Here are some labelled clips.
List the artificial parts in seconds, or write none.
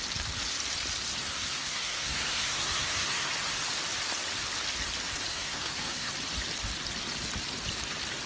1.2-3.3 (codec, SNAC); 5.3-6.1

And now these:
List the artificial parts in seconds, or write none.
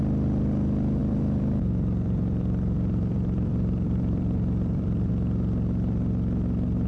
1.0-5.1 (vocoder, BigVGAN v2)